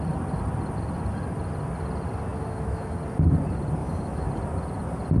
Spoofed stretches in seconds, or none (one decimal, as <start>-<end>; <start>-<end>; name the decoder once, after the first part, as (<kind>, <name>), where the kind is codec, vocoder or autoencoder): 2.3-3.0 (autoencoder, DAC-VAE); 3.8-4.3